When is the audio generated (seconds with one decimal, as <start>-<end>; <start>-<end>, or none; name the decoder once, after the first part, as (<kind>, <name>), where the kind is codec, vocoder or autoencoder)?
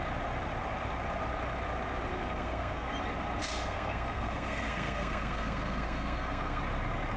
2.1-2.9 (codec, SNAC); 3.4-6.6